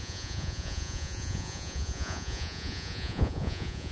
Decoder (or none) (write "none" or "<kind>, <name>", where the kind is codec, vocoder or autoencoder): vocoder, Vocos